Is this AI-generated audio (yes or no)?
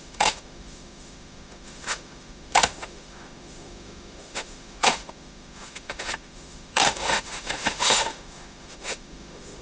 yes